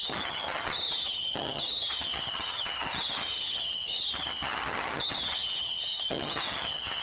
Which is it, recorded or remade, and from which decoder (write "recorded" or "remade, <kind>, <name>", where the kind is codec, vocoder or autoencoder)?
remade, vocoder, HiFi-GAN